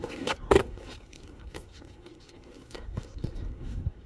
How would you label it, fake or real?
fake